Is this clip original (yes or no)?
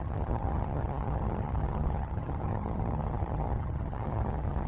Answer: no